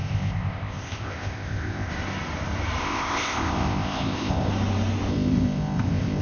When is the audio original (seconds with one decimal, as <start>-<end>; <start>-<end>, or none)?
1.9-2.8; 4.5-5.1

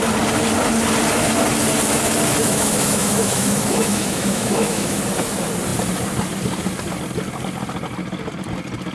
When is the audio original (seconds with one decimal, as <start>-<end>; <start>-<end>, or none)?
0.0-2.4; 5.0-8.9